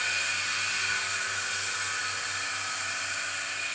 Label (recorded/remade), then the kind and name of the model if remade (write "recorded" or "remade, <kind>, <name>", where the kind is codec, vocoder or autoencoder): recorded